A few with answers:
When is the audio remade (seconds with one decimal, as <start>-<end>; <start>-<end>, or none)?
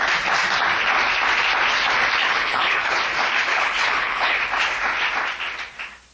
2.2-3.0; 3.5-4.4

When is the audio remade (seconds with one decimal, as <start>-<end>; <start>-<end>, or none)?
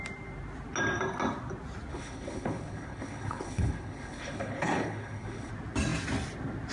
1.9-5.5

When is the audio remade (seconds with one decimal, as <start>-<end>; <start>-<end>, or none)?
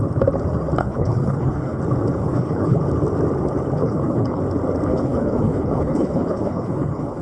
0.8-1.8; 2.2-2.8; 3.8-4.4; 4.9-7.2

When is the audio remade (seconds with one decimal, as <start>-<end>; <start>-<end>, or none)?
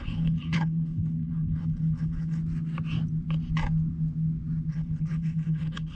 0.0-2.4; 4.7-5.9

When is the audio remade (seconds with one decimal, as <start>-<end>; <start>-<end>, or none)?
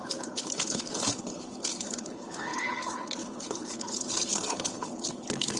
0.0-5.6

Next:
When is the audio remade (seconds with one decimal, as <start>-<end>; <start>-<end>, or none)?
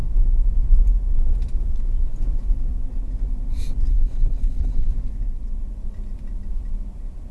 3.9-4.9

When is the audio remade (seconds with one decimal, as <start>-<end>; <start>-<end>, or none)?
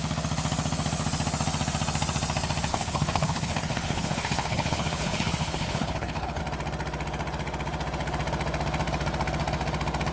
2.7-6.4